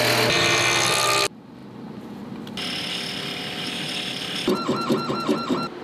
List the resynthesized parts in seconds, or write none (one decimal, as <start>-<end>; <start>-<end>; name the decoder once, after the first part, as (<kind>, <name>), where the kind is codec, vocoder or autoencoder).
none